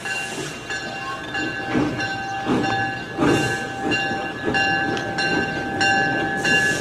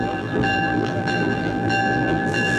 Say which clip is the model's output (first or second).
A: second